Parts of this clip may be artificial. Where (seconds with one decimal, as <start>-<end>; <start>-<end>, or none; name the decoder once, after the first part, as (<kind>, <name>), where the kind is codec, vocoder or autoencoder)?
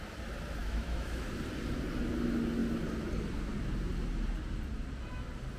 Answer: 0.6-1.3 (autoencoder, DAC-VAE)